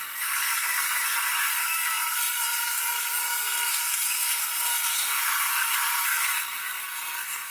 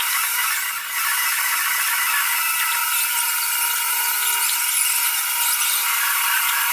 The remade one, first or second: first